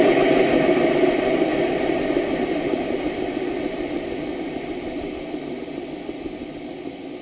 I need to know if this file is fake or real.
real